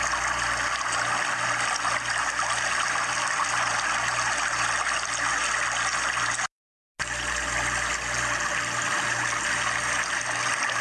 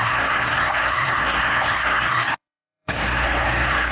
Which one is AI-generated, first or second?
second